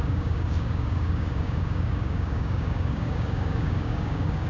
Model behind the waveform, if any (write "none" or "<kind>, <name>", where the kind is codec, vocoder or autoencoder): codec, DAC